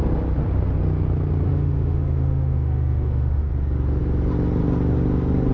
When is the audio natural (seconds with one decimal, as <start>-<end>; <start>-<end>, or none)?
0.0-1.5; 3.5-5.5